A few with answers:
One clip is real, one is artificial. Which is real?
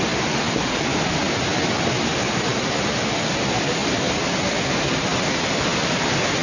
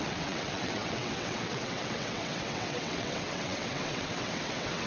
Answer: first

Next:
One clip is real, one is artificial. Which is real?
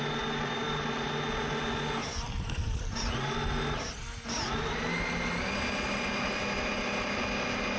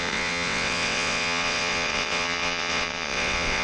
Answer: first